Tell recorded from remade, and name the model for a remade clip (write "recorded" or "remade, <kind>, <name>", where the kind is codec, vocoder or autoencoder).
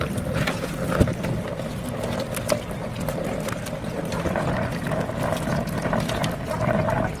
recorded